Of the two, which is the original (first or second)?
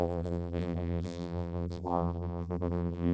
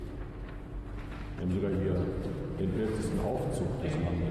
second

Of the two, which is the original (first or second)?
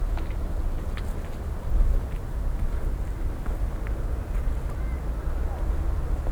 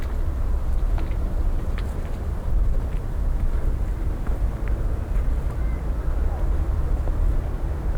first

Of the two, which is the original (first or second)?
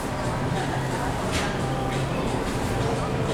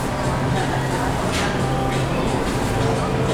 second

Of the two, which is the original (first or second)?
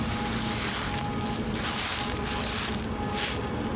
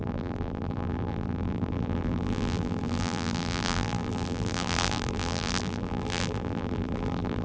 first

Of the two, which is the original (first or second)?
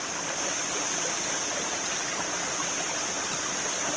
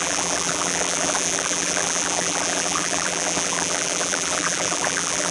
first